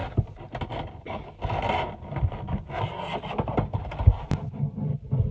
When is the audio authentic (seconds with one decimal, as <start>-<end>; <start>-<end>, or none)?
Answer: 0.0-5.3